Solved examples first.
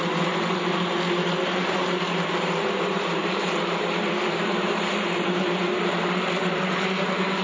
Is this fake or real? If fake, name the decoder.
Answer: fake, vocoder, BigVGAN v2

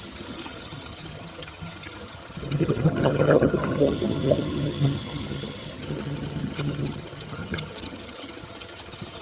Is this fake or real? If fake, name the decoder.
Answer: fake, vocoder, HiFi-GAN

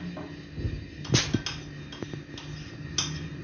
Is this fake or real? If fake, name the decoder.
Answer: real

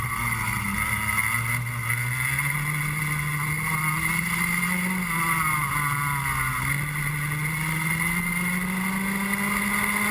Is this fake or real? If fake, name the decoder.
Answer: real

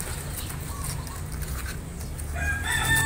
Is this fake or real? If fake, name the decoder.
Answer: real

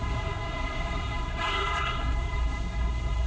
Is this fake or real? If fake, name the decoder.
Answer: fake, codec, SNAC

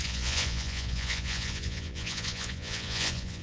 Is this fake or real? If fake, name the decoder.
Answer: fake, vocoder, Vocos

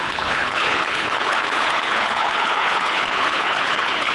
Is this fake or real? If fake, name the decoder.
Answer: fake, codec, HILCodec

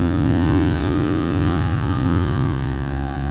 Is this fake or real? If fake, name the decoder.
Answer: fake, vocoder, Vocos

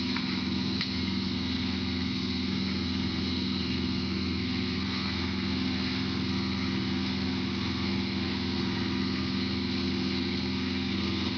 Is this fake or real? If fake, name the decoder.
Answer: fake, codec, SNAC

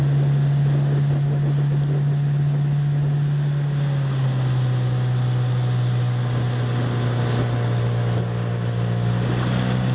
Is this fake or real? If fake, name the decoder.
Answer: real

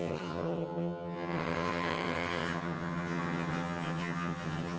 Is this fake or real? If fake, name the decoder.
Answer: fake, vocoder, HiFi-GAN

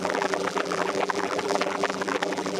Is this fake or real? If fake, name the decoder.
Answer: fake, vocoder, BigVGAN v2